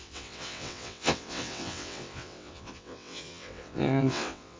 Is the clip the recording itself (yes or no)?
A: no